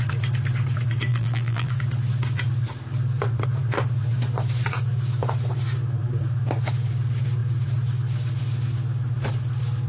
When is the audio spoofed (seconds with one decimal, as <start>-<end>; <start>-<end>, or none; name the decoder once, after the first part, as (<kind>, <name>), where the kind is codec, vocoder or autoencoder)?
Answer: 1.1-1.7 (vocoder, BigVGAN v2)